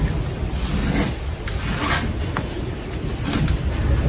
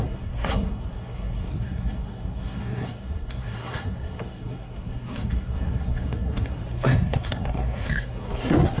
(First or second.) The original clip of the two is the first